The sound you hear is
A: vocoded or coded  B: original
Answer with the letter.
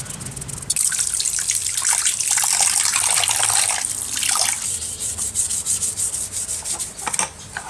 B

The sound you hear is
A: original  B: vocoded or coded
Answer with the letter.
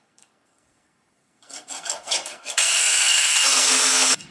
B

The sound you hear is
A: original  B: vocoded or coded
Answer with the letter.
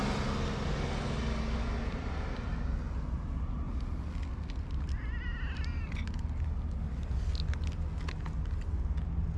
A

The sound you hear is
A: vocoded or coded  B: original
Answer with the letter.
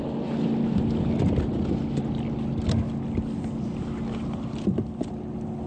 B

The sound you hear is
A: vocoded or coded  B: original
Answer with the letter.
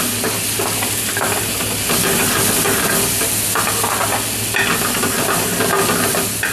B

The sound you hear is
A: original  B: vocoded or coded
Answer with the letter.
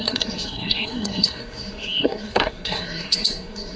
B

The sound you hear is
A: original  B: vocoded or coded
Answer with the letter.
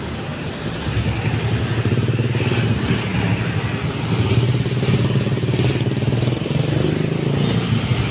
A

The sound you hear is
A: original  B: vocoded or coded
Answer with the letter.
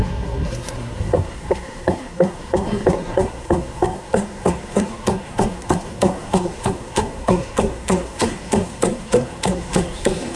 B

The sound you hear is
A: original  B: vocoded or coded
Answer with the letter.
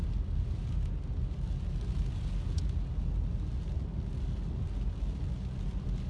A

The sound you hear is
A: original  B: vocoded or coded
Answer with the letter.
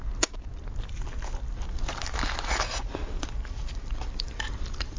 A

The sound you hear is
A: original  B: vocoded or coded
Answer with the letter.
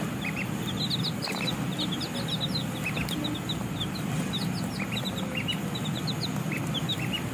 A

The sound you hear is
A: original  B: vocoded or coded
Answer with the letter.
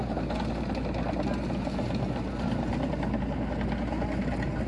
A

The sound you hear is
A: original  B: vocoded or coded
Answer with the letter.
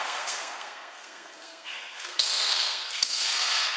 B